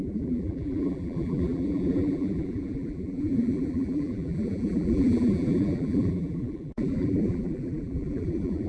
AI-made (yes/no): yes